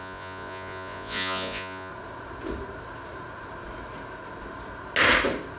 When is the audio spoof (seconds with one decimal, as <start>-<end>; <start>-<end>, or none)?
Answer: 0.0-1.9